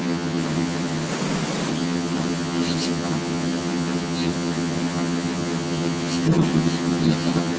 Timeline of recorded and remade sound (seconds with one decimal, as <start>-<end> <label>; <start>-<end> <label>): 0.0-1.1 remade; 1.1-1.7 recorded; 1.7-7.6 remade